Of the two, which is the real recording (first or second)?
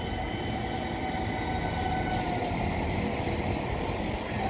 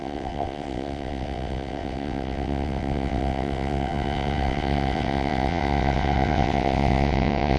first